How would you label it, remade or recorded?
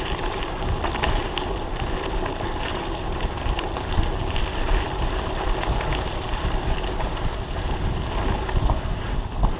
remade